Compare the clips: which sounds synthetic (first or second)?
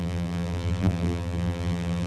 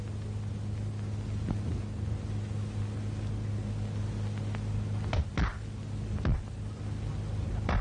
first